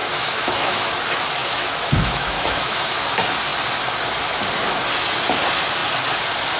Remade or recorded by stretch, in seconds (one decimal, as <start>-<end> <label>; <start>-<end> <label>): 0.0-0.9 remade; 0.9-1.4 recorded; 1.4-3.1 remade; 3.1-6.6 recorded